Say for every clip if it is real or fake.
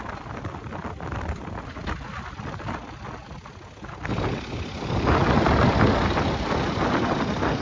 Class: real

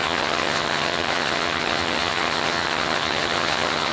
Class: fake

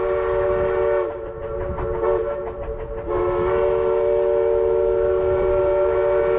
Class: real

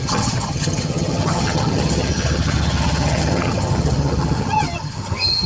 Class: fake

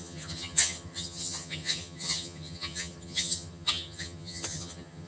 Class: fake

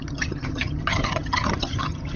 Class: fake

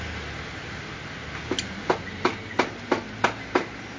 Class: real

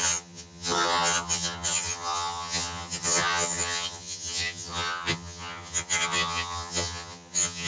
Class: fake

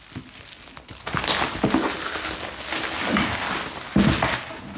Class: real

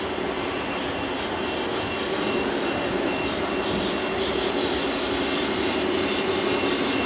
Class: real